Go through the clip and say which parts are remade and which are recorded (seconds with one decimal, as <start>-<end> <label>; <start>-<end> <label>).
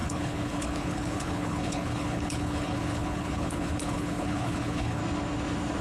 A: 0.0-5.0 remade; 5.0-5.8 recorded